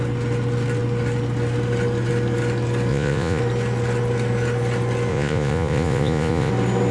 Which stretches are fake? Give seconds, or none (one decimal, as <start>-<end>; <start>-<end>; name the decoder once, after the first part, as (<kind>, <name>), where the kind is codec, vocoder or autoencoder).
2.9-3.4 (vocoder, Vocos); 5.1-6.5